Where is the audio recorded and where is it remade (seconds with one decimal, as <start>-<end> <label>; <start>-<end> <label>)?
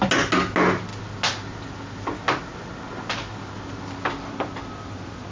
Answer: 0.0-5.3 recorded